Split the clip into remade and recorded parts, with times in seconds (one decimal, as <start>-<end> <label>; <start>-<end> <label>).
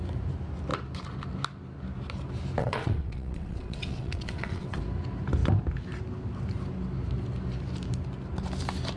0.0-2.6 recorded; 2.6-4.8 remade; 4.8-9.0 recorded